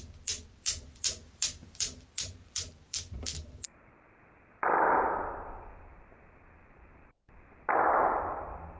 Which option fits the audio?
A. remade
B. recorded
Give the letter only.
A